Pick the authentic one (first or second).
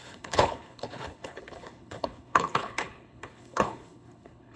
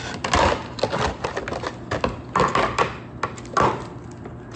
second